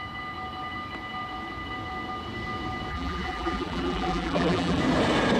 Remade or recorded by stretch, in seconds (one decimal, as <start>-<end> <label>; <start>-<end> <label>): 0.0-2.9 recorded; 2.9-4.8 remade; 4.8-5.4 recorded